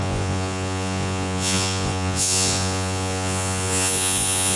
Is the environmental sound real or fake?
fake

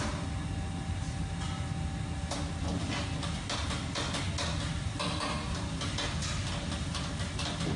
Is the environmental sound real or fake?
real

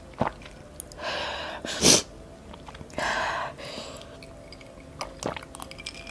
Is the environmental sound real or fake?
real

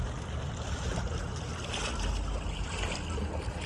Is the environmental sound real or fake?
real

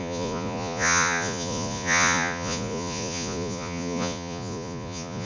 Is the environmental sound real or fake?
fake